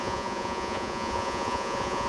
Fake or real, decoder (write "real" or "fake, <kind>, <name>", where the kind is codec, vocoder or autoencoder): fake, vocoder, Vocos